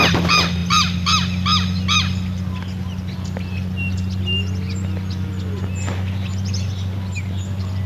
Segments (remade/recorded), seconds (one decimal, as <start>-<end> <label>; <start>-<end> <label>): 0.0-7.9 recorded